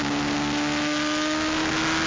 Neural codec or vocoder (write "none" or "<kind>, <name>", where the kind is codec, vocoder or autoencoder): none